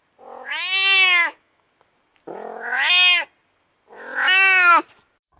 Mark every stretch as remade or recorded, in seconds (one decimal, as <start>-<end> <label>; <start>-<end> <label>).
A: 0.0-0.5 recorded; 0.5-1.7 remade; 1.7-5.4 recorded